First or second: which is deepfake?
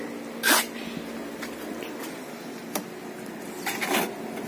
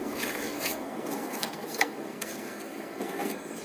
second